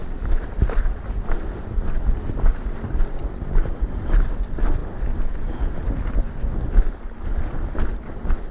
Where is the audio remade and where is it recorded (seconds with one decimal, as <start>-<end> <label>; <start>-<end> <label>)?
0.0-8.5 recorded